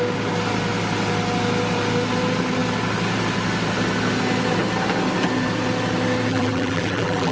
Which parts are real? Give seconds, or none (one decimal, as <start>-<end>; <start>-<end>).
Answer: 0.0-6.3